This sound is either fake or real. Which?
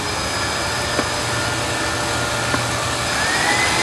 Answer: real